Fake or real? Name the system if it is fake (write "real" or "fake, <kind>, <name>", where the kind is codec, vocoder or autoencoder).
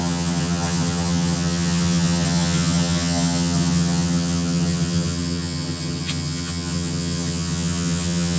fake, vocoder, HiFi-GAN